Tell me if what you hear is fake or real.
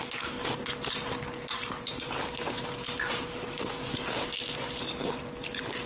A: real